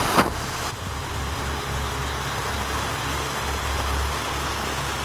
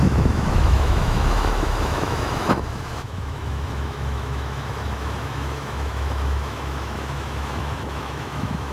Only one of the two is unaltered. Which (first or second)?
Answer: first